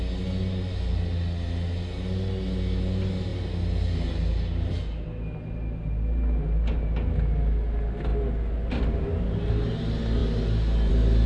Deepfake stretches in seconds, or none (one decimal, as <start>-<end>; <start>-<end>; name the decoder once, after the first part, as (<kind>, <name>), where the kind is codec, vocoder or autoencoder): none